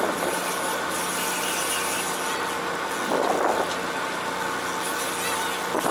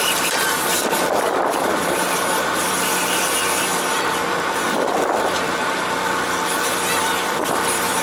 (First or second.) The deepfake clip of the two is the second